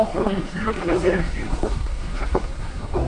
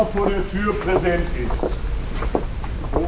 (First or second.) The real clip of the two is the second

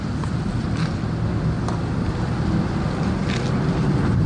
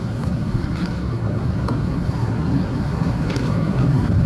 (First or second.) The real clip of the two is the first